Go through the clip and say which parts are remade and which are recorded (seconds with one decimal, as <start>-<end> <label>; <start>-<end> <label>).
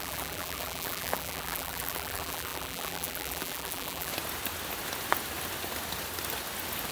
0.0-4.1 remade; 4.1-6.9 recorded